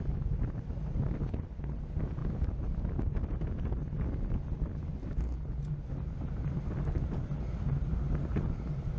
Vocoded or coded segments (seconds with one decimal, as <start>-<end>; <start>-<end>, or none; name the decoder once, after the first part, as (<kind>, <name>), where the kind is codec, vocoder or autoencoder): none